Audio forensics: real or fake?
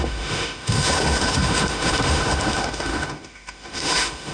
fake